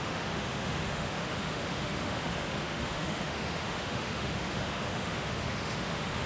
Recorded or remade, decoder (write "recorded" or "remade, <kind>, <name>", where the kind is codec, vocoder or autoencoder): remade, autoencoder, DAC-VAE